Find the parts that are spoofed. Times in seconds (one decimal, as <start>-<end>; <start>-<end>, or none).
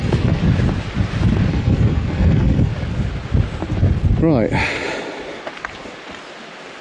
0.0-0.4; 1.5-2.7